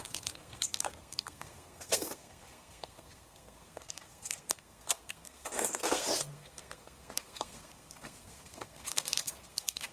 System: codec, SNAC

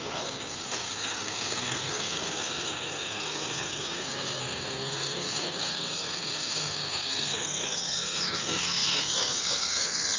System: codec, SNAC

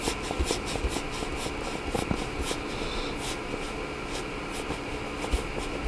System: none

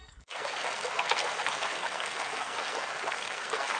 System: codec, SNAC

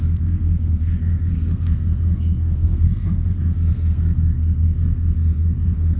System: codec, SNAC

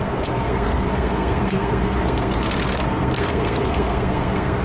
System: codec, SNAC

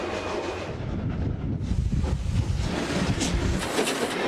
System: none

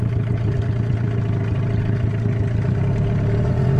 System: none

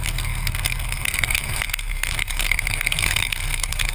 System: codec, SNAC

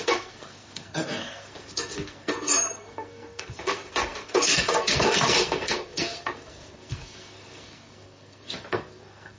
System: codec, SNAC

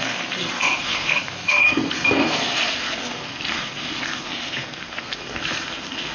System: codec, SNAC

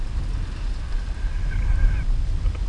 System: none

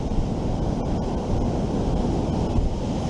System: none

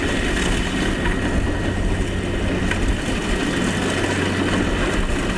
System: none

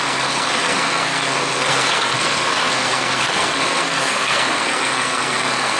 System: codec, SNAC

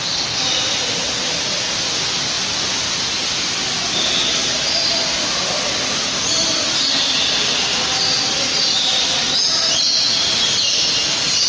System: none